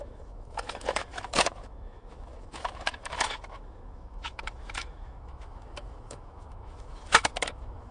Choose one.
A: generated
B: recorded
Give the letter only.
A